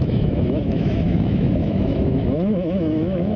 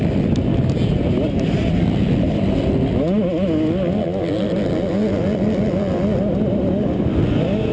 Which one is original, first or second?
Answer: second